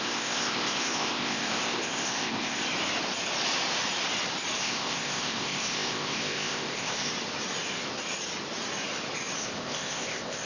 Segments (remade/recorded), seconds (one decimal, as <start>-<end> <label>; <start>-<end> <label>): 0.0-2.6 remade; 2.6-4.6 recorded; 4.6-7.1 remade; 7.1-9.4 recorded; 9.4-10.5 remade